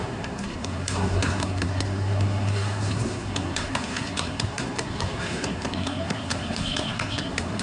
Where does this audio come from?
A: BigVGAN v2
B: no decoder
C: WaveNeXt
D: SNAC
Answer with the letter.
D